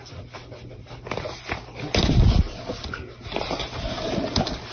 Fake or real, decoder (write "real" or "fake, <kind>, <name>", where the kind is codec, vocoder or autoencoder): real